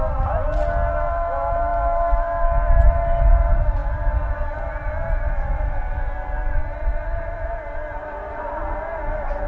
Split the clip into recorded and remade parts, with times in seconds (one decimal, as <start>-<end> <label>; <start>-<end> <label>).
0.0-9.5 recorded